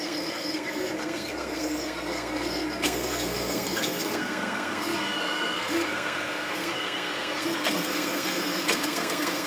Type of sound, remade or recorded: remade